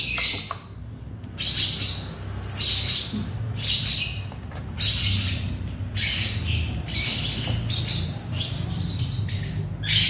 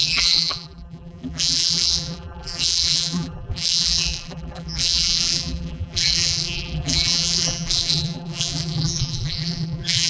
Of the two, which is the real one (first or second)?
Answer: first